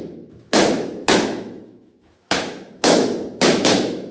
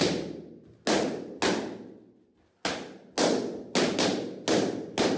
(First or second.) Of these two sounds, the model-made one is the first